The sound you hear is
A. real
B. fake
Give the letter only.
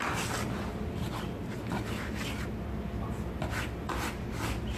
A